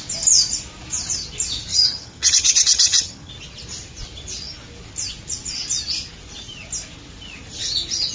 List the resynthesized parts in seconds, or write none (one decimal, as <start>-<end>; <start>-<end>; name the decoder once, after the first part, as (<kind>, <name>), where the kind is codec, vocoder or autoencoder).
1.7-3.3 (vocoder, HiFi-GAN)